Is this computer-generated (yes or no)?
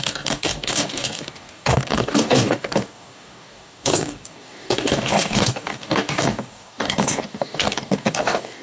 yes